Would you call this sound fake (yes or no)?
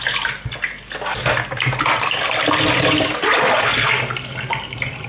no